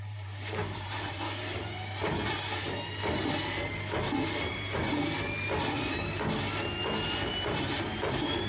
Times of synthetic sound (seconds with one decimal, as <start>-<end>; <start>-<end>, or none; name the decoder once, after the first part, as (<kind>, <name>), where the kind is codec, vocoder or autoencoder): 0.0-2.6 (vocoder, BigVGAN v2); 7.3-8.5